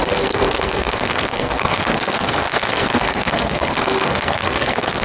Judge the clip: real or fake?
fake